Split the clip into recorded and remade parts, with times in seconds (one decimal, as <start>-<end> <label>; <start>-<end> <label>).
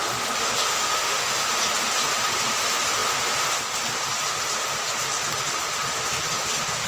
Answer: 0.0-0.7 recorded; 0.7-1.3 remade; 1.3-6.9 recorded